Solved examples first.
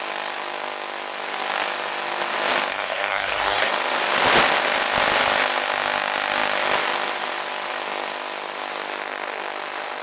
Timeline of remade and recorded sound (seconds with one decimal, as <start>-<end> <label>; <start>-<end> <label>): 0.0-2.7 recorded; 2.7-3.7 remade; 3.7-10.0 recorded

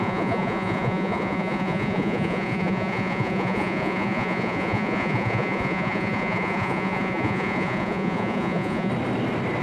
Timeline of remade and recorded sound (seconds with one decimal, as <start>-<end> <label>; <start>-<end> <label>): 0.0-8.9 remade; 8.9-9.6 recorded

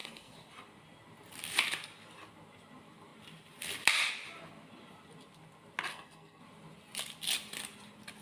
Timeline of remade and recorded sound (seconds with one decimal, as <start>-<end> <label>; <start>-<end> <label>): 0.0-0.5 remade; 0.5-5.9 recorded; 5.9-6.4 remade; 6.4-8.2 recorded